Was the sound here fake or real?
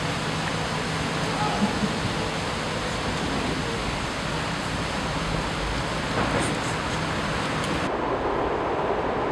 real